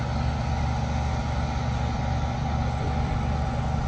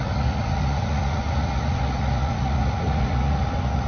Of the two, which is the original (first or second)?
first